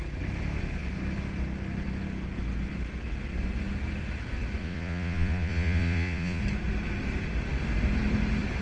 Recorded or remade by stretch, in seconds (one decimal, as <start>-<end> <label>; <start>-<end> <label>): 0.0-4.6 recorded; 4.6-6.4 remade; 6.4-8.6 recorded